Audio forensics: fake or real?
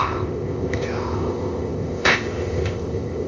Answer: fake